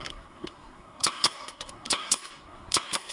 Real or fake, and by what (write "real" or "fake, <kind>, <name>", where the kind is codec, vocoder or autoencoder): fake, codec, SNAC